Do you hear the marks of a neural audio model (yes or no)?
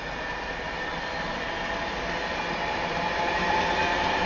no